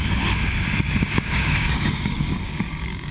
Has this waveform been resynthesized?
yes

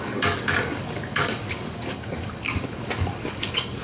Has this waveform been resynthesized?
yes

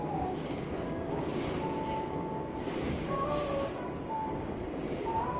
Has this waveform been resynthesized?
yes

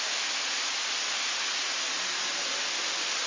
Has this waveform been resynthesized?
no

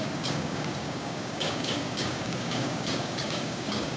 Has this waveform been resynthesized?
yes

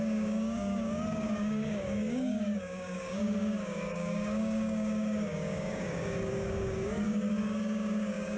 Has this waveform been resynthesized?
yes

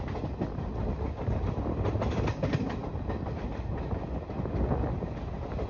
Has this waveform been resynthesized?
no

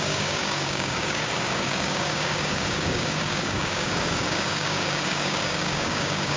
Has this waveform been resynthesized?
yes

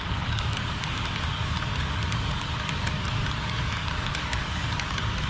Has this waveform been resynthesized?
yes